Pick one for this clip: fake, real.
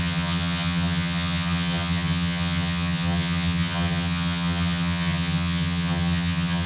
fake